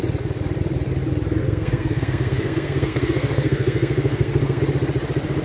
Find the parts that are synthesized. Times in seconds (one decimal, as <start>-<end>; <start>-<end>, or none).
1.4-4.6